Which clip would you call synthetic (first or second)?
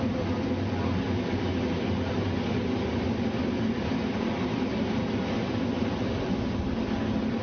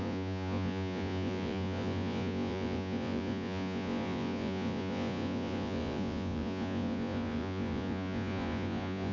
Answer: second